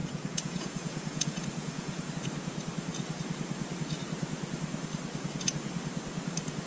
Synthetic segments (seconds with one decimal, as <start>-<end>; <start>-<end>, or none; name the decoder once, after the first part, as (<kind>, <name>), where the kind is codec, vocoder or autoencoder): 0.0-2.1 (vocoder, Vocos)